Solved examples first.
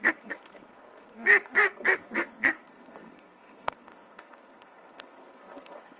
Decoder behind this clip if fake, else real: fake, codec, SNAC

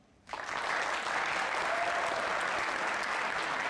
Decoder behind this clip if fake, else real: real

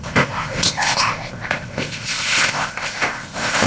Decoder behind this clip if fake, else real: fake, codec, ZipCodec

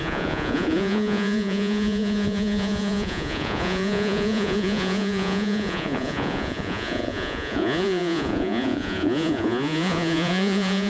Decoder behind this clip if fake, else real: fake, vocoder, Vocos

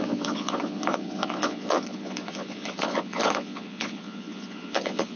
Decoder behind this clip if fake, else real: fake, vocoder, Vocos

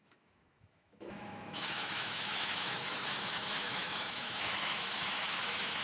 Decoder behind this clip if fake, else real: fake, autoencoder, DAC-VAE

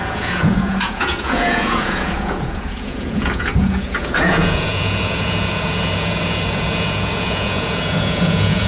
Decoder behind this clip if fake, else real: fake, vocoder, Vocos